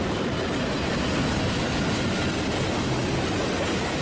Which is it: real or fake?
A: real